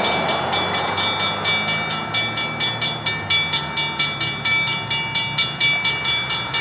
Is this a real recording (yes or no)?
yes